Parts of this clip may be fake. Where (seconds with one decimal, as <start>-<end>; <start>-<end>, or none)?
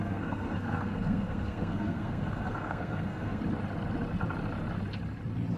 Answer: 0.0-3.4